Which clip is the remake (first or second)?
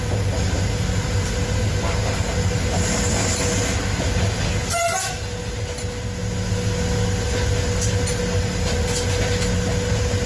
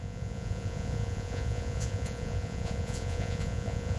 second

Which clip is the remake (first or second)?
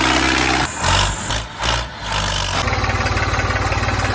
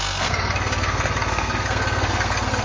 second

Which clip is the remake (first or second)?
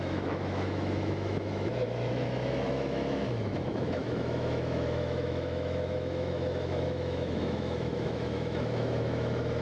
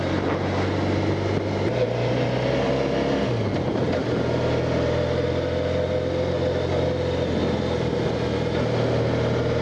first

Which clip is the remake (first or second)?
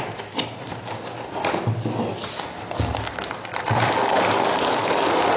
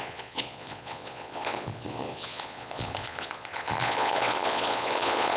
second